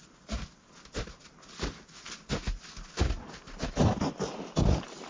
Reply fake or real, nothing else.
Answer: real